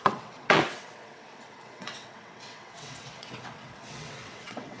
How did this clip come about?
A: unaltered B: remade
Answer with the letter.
B